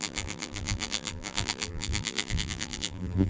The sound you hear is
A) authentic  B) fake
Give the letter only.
B